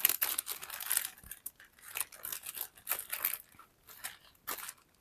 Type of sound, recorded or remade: recorded